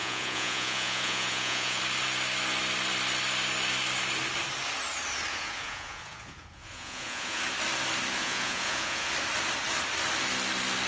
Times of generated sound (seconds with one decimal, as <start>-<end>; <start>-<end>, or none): 0.0-1.8; 5.3-7.4; 8.2-9.1